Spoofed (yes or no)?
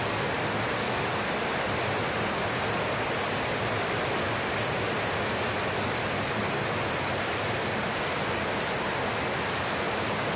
no